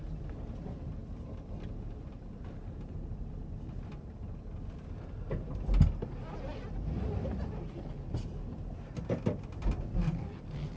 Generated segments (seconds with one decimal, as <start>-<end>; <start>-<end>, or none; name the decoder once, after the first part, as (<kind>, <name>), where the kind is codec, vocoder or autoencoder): none